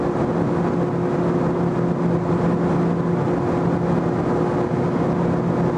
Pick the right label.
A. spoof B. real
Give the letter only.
B